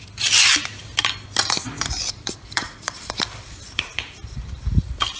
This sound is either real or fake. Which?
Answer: fake